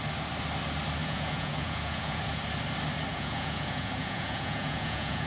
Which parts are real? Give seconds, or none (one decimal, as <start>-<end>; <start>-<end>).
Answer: 0.0-1.0; 2.2-3.1

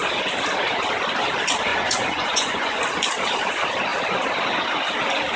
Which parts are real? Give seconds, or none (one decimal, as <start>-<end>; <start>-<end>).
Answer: 0.0-1.7; 2.8-5.4

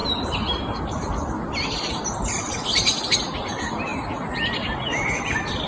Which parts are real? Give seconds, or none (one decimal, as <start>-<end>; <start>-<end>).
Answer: 0.0-5.7

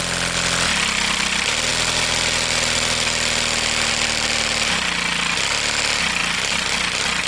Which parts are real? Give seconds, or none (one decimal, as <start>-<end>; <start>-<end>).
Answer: 0.0-7.3

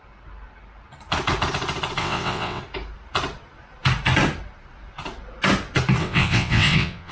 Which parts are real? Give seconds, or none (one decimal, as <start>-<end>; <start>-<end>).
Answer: 0.0-2.0; 2.6-6.0

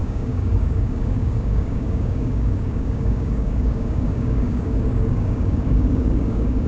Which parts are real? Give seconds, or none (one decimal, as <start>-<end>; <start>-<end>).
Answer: none